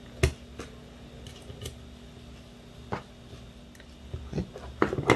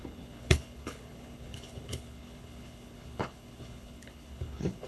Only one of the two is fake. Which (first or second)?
second